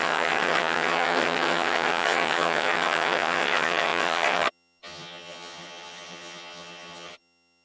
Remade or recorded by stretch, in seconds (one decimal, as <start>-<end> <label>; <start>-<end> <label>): 0.0-7.6 remade